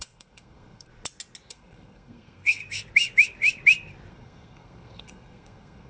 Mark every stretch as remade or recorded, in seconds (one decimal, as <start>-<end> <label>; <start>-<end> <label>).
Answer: 0.0-0.9 remade; 0.9-1.5 recorded; 1.5-2.6 remade; 2.6-4.1 recorded; 4.1-5.9 remade